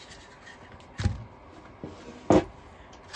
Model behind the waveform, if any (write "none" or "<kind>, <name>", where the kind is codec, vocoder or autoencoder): none